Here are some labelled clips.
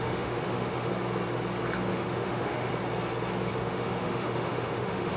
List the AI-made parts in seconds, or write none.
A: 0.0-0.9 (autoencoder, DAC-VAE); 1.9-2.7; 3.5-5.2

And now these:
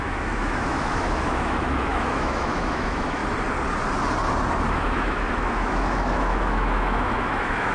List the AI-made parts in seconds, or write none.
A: 0.0-3.2 (autoencoder, DAC-VAE); 4.7-7.7

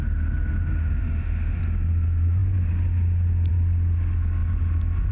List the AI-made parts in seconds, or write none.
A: 1.0-1.6 (autoencoder, DAC-VAE)

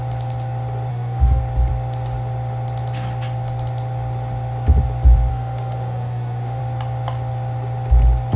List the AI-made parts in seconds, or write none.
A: 0.9-1.4 (autoencoder, DAC-VAE); 5.3-6.6

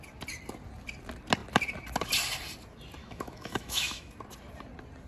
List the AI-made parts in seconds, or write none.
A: 3.0-4.1 (autoencoder, DAC-VAE)